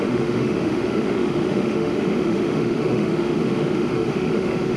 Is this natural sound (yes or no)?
no